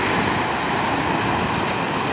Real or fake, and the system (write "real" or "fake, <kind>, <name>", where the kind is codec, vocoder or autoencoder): real